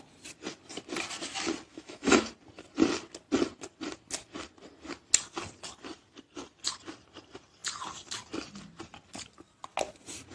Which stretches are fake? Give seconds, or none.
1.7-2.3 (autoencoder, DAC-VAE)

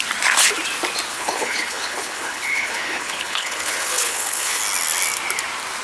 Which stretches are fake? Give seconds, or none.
1.1-4.6 (codec, HILCodec)

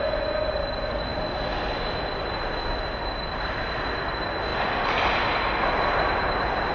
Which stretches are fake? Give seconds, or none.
none